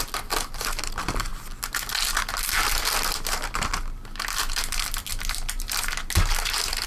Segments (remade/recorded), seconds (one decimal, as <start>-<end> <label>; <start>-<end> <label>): 0.0-6.9 recorded